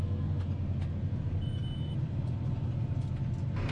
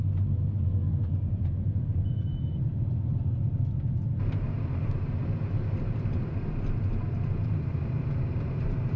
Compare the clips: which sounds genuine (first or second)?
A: first